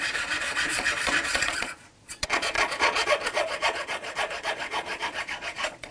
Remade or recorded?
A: remade